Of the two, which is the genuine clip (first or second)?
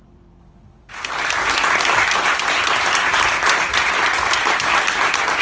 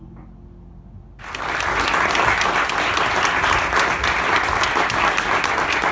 second